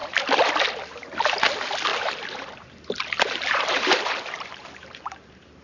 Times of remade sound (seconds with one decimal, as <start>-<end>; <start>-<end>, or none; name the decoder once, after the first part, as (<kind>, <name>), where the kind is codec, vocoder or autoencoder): 0.0-0.5 (vocoder, BigVGAN v2); 1.9-5.6